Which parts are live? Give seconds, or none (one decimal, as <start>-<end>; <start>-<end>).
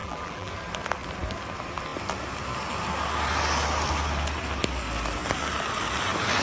0.5-6.4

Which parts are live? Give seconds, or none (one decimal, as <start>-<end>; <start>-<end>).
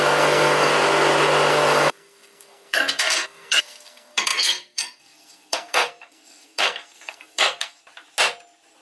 0.7-1.5; 7.8-8.8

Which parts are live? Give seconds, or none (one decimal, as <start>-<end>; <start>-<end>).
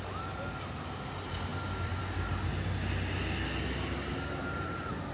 0.0-5.1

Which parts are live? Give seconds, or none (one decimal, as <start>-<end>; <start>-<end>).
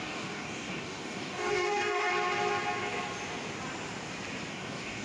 2.1-4.5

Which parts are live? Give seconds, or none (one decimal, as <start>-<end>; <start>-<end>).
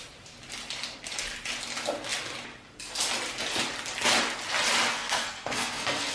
0.0-4.9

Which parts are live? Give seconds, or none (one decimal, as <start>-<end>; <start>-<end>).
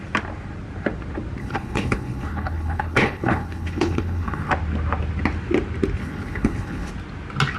0.0-1.4; 4.5-6.0; 6.9-7.6